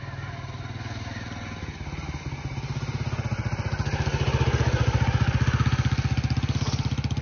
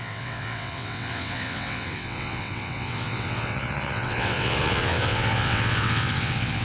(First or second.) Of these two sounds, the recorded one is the first